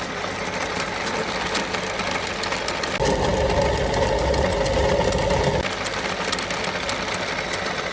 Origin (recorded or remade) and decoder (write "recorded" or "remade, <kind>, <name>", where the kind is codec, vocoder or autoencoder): recorded